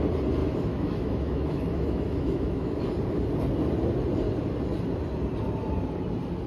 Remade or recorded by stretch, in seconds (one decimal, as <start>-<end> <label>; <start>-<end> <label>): 0.0-0.4 recorded; 0.4-2.8 remade; 2.8-6.5 recorded